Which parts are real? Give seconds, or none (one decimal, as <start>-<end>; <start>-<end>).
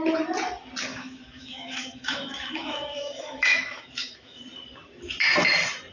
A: 0.0-0.9; 4.4-5.9